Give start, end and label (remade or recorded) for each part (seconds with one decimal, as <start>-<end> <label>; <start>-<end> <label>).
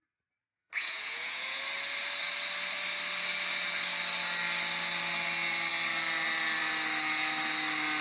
0.0-0.5 recorded; 0.5-1.6 remade; 1.6-8.0 recorded